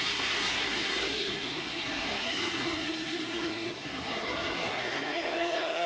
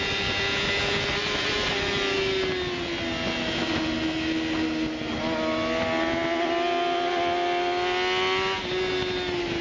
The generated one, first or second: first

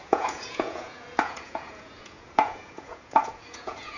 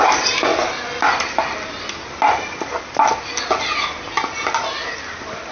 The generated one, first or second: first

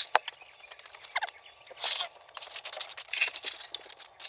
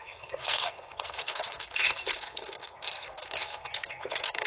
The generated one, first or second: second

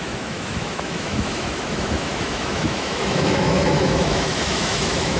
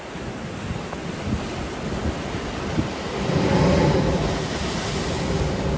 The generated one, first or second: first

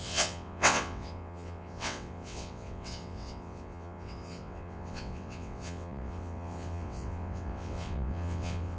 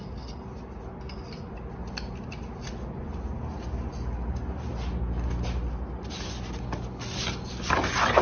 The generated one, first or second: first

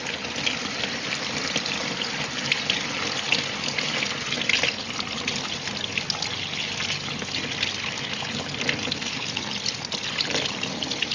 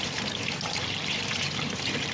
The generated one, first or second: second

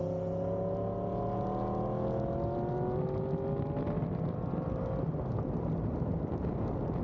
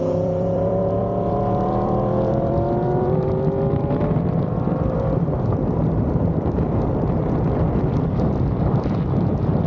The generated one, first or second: second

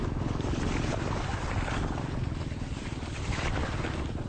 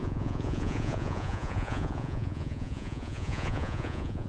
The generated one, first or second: second